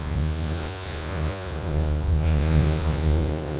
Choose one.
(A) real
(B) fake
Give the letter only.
B